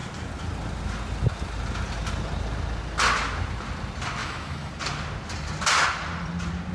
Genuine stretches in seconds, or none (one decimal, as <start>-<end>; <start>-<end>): 0.0-4.2; 4.7-6.7